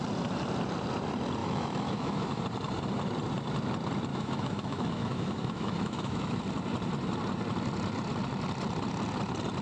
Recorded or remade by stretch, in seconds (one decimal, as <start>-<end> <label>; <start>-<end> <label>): 0.0-1.4 recorded; 1.4-2.4 remade; 2.4-4.1 recorded; 4.1-6.4 remade; 6.4-9.6 recorded